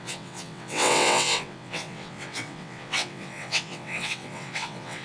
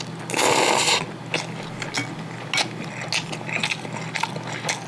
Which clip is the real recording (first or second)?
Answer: second